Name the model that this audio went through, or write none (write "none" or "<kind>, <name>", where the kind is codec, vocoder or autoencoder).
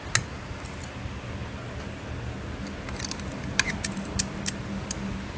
none